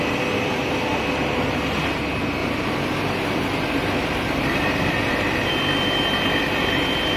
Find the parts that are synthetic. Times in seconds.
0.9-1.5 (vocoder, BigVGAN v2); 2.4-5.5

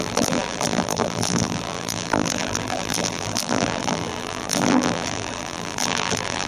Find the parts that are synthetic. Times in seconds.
0.0-6.5 (vocoder, BigVGAN v2)

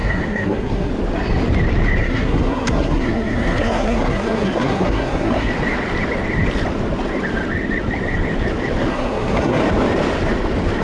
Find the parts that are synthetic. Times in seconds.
0.0-0.9 (codec, SNAC); 2.0-5.5; 8.9-9.6